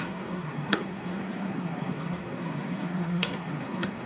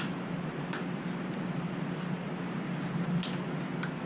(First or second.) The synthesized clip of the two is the first